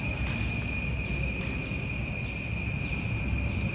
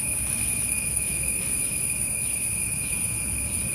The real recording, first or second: first